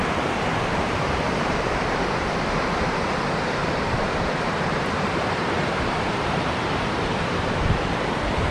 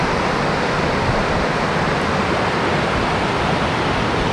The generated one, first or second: first